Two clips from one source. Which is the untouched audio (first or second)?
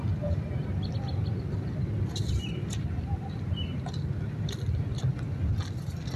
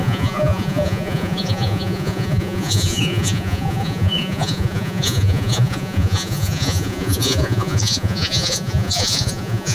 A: first